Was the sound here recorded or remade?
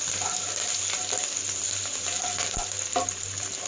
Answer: recorded